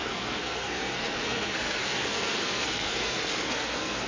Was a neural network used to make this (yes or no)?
yes